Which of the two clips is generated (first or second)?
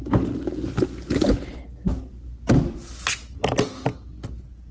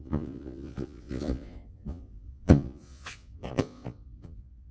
second